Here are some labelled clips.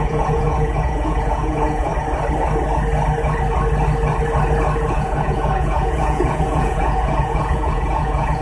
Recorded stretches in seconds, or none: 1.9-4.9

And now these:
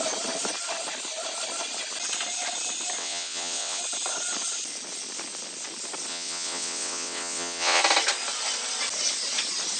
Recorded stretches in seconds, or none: 0.0-3.0; 3.8-6.1; 7.8-9.8

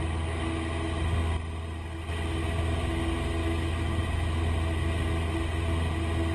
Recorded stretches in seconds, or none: 0.0-3.4; 4.0-6.3

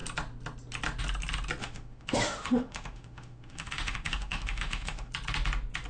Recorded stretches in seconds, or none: 0.0-1.6; 5.1-5.9

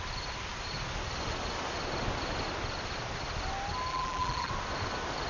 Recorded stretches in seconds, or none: 0.0-3.9; 4.5-5.3

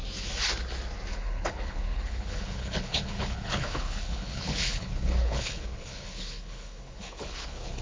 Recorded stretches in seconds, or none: 0.0-1.1

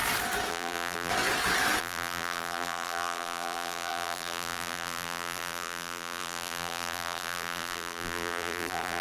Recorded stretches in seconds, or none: 0.0-0.5; 1.1-1.8

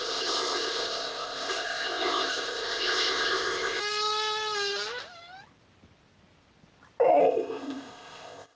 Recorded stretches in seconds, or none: 3.8-7.2